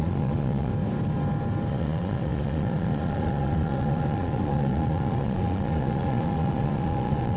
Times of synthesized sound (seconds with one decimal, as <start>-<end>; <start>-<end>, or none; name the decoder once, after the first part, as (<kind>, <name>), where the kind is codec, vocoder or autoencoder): 0.0-0.7 (vocoder, Vocos); 1.7-7.4